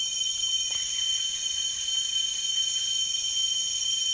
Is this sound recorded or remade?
remade